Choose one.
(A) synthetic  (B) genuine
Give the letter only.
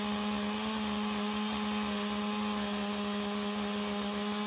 B